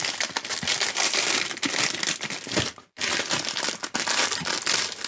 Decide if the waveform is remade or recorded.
recorded